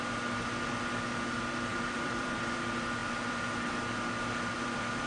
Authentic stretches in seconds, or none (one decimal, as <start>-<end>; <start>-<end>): 0.0-1.7; 2.4-5.1